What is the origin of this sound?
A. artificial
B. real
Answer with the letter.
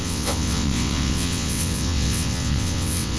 A